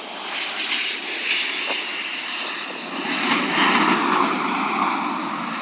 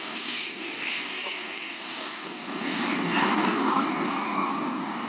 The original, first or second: first